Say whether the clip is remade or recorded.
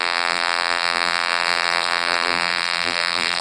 remade